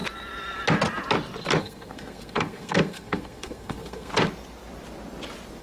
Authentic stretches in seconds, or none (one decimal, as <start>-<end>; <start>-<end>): 0.0-1.6; 4.1-5.6

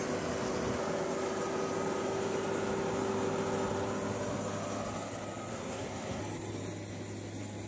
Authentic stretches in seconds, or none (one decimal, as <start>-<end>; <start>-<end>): 0.0-5.5; 6.2-7.7

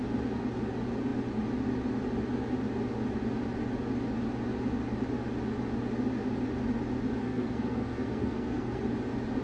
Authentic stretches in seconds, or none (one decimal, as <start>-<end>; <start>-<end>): 0.0-7.2; 8.8-9.4

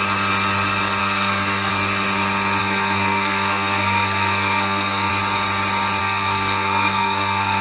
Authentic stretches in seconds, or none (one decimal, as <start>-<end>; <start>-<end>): 0.0-1.0; 1.7-2.6; 5.1-6.0

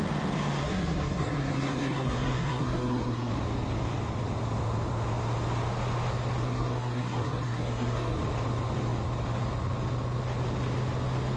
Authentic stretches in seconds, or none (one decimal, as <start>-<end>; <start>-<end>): 0.0-0.6; 3.3-6.4; 8.2-11.4

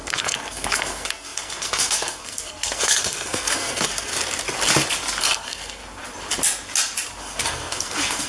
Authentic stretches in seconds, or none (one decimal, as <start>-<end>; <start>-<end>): 4.1-5.2; 5.8-7.2

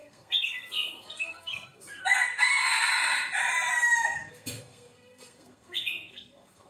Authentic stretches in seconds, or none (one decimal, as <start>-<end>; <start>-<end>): 2.9-3.7